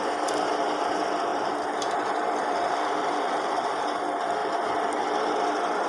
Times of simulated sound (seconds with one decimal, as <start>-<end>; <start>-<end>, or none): 1.3-3.7; 4.4-5.0